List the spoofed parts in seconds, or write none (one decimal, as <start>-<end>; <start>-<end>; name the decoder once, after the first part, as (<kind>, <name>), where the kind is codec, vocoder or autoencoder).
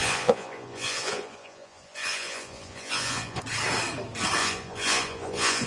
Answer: 0.0-3.4 (vocoder, Vocos); 4.4-5.7